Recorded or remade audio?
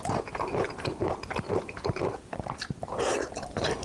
remade